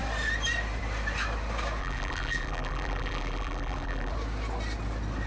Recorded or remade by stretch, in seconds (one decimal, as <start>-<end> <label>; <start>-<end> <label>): 0.0-1.8 recorded; 1.8-4.1 remade; 4.1-5.3 recorded